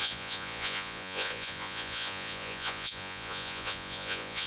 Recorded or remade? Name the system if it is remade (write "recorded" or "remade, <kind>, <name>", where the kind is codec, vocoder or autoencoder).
remade, vocoder, Vocos